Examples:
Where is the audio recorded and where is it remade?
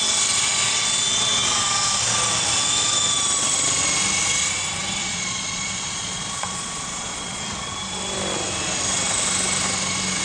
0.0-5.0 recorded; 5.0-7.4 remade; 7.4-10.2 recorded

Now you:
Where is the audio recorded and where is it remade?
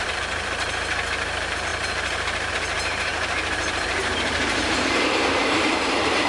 0.0-6.3 remade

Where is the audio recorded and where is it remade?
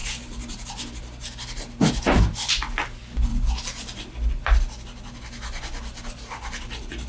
0.0-7.1 recorded